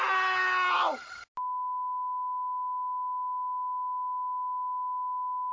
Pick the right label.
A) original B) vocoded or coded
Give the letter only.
A